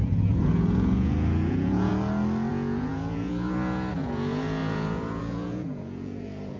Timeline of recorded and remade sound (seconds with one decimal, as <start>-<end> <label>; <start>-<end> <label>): 0.0-1.9 remade; 1.9-2.5 recorded; 2.5-6.6 remade